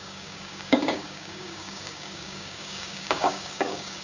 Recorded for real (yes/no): no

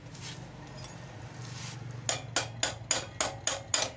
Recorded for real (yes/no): yes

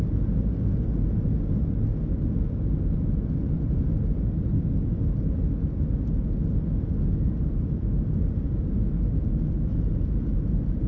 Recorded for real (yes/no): yes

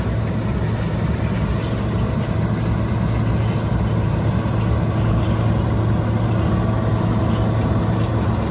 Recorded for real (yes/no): yes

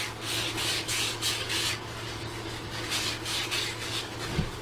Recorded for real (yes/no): no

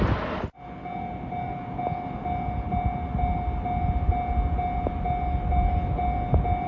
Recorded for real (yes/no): yes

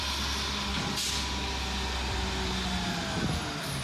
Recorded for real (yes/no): yes